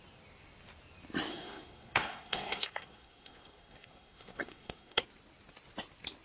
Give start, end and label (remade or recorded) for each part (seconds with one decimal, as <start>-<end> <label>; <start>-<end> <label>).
0.0-1.3 recorded; 1.3-5.0 remade; 5.0-6.2 recorded